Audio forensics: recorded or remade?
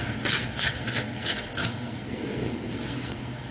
remade